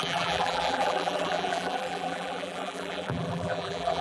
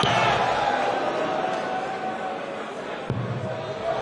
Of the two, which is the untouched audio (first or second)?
second